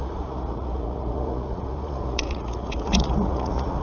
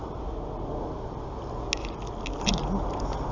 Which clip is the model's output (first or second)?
first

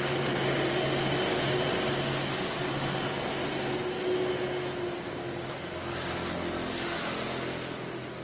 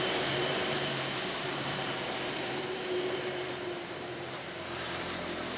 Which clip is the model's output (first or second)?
second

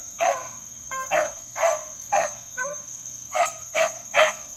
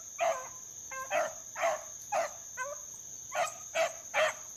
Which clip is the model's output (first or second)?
first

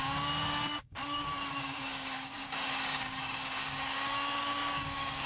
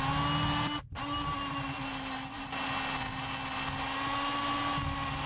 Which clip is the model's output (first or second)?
first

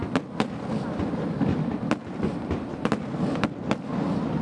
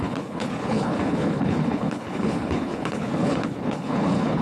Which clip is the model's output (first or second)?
second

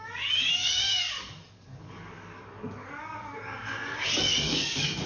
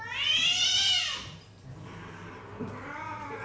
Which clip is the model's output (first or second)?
first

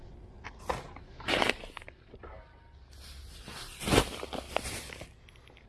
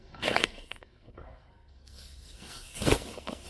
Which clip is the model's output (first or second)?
second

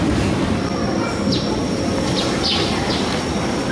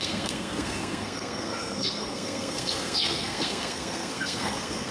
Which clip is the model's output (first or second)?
second